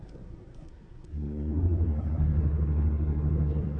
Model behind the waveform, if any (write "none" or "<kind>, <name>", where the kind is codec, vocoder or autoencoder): codec, SNAC